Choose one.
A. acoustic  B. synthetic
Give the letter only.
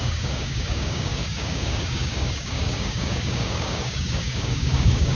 B